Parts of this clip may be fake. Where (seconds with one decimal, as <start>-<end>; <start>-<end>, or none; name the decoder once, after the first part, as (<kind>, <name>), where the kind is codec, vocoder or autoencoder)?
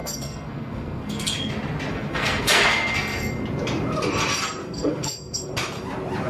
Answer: 0.0-1.5 (codec, SNAC); 1.9-3.3; 4.6-5.5